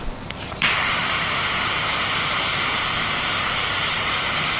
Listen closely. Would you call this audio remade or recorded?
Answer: remade